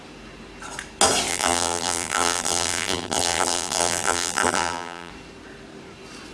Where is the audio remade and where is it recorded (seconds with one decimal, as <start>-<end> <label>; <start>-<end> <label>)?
0.0-1.3 recorded; 1.3-5.1 remade; 5.1-6.3 recorded